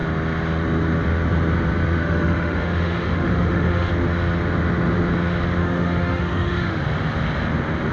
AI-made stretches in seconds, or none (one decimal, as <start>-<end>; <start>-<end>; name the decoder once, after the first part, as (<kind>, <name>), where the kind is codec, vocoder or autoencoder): 2.0-3.9 (autoencoder, DAC-VAE); 5.6-6.8